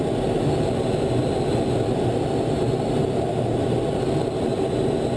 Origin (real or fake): real